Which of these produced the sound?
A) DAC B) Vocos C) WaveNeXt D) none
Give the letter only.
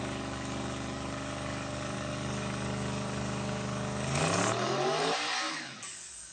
A